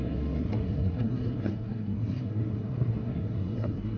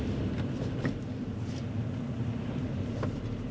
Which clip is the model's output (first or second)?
first